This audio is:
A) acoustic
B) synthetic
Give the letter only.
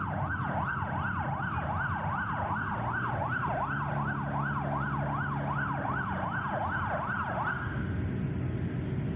A